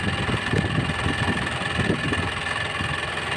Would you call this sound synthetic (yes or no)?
no